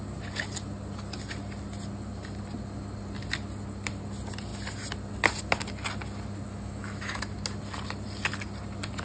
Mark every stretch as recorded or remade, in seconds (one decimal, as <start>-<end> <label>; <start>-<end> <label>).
0.0-6.5 recorded; 6.5-7.2 remade; 7.2-9.0 recorded